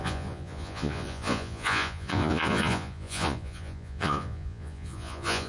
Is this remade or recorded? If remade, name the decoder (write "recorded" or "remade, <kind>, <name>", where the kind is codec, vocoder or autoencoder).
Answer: remade, vocoder, Vocos